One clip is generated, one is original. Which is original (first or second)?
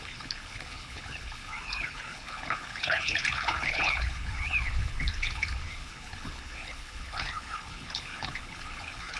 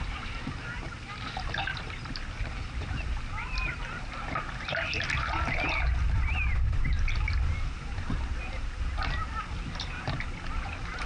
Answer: second